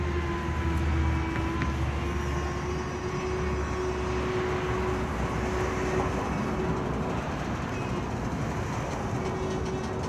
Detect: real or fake real